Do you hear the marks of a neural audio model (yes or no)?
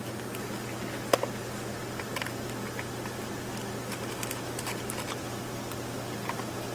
no